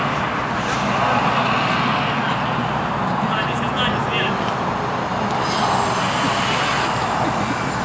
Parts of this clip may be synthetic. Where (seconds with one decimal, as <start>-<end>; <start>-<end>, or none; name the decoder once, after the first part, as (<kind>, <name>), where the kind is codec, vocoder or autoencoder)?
none